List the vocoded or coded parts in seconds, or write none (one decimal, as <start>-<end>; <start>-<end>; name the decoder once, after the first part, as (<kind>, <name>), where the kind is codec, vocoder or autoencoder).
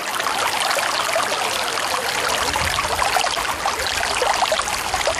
none